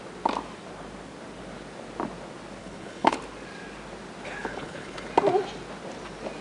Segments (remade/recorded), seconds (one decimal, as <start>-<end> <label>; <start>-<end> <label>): 0.0-2.6 recorded; 2.6-3.2 remade; 3.2-4.4 recorded; 4.4-5.1 remade; 5.1-6.4 recorded

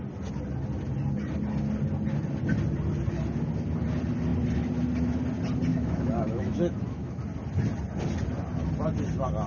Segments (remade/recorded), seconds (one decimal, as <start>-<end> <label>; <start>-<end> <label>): 0.0-5.7 recorded; 5.7-7.2 remade; 7.2-9.5 recorded

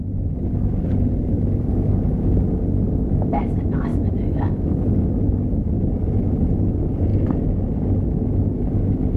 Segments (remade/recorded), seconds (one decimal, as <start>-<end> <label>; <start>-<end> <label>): 0.0-9.2 recorded

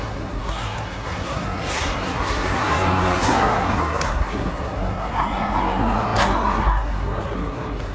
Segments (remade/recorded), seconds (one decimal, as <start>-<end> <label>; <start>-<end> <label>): 0.0-7.9 remade

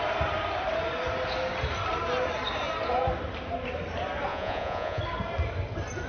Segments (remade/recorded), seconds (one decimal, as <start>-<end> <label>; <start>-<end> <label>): 0.0-4.3 recorded; 4.3-5.0 remade; 5.0-6.1 recorded

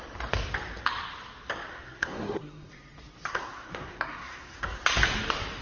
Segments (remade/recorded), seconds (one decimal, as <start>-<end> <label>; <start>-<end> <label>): 0.0-1.7 recorded; 1.7-2.7 remade; 2.7-3.3 recorded; 3.3-4.8 remade; 4.8-5.6 recorded

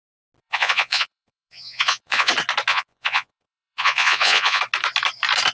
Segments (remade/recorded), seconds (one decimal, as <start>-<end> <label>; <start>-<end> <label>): 0.0-0.4 recorded; 0.4-2.3 remade; 2.3-2.7 recorded; 2.7-4.6 remade; 4.6-5.5 recorded

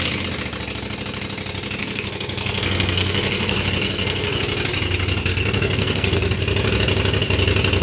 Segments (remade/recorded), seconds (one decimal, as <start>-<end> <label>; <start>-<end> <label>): 0.0-1.8 recorded; 1.8-4.4 remade; 4.4-5.3 recorded; 5.3-6.4 remade; 6.4-7.8 recorded